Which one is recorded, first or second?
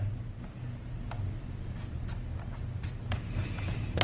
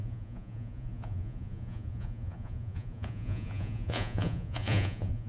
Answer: first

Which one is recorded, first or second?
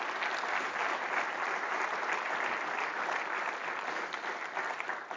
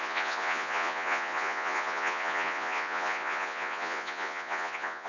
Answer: first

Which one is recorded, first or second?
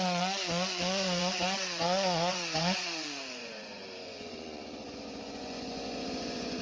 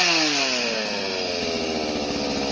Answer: second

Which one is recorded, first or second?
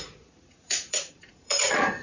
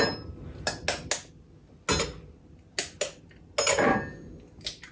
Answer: second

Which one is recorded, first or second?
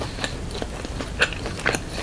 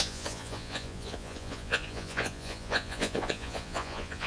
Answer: first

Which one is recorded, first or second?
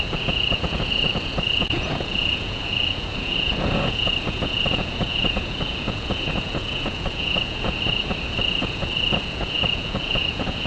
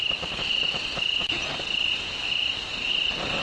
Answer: second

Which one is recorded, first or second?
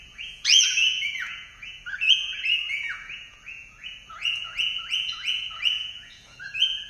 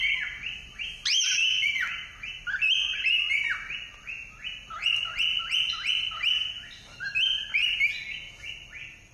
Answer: second